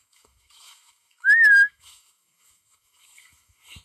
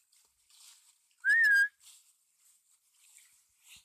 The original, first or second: second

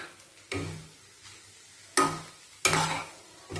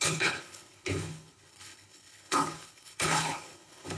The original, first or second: first